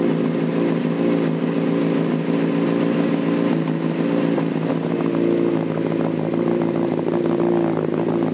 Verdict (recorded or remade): recorded